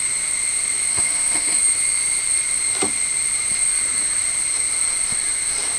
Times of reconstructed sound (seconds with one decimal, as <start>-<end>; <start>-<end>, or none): 0.9-1.6

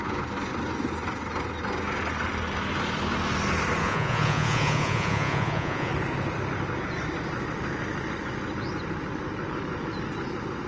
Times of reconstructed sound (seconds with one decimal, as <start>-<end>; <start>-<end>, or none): 3.8-5.9